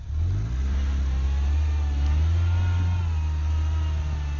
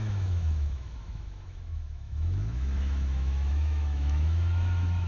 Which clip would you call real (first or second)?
first